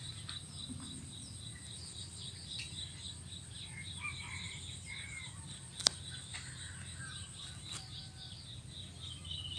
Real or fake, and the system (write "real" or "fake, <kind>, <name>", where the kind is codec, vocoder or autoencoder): real